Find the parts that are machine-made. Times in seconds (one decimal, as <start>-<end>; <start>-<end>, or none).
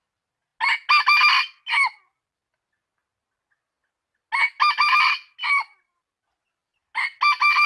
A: none